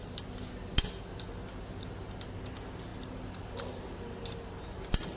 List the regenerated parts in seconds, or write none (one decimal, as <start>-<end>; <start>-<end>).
none